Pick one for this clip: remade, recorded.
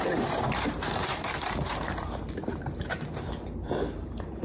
remade